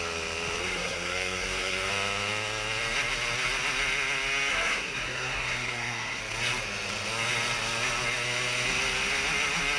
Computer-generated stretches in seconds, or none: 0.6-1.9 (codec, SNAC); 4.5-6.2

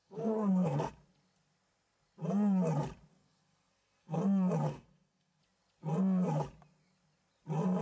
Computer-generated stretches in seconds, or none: 0.0-0.9 (codec, SNAC); 3.1-4.2; 4.7-5.4

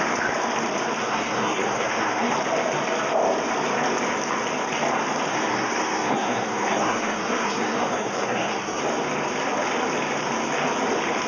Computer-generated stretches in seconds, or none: 1.0-2.3 (codec, SNAC); 5.3-8.8